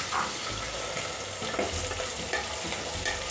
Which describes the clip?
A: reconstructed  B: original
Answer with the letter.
B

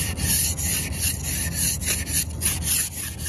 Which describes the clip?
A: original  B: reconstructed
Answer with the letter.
A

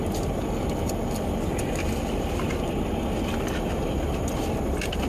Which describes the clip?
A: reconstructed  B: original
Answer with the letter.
B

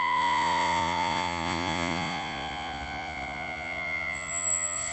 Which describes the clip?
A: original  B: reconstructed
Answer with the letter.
B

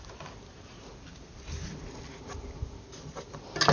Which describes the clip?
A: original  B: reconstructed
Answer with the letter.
A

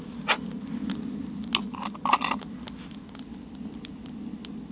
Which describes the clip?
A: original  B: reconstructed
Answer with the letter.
A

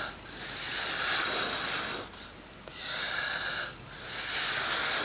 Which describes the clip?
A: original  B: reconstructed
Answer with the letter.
A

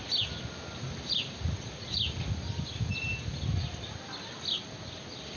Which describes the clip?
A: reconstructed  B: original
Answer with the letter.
B